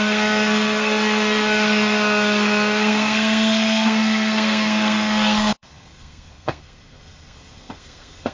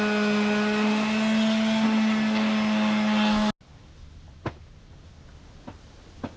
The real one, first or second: second